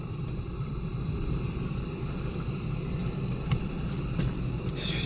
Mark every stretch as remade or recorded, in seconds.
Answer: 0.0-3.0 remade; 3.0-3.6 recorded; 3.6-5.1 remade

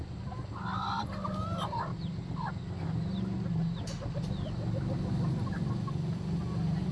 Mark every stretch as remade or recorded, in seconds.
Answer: 0.0-1.9 remade; 1.9-3.5 recorded; 3.5-6.9 remade

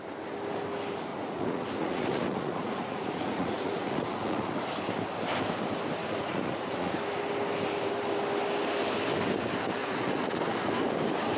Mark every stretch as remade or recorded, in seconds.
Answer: 0.0-1.1 recorded; 1.1-4.6 remade; 4.6-6.0 recorded; 6.0-6.9 remade; 6.9-9.8 recorded; 9.8-10.4 remade; 10.4-11.4 recorded

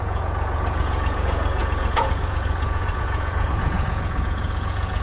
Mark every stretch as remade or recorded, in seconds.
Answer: 0.0-5.0 remade

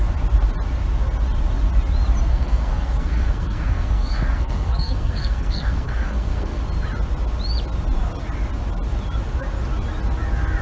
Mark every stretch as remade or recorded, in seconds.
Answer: 0.0-2.3 recorded; 2.3-6.6 remade; 6.6-10.6 recorded

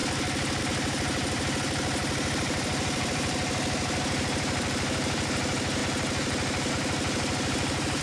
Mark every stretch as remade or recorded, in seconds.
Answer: 0.0-0.6 recorded; 0.6-5.8 remade; 5.8-6.7 recorded; 6.7-8.0 remade

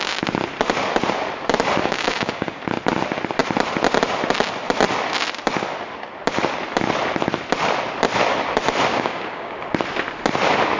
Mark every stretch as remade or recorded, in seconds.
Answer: 0.0-1.8 recorded; 1.8-2.6 remade; 2.6-8.9 recorded; 8.9-9.5 remade; 9.5-10.8 recorded